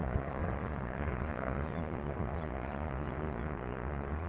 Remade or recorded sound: remade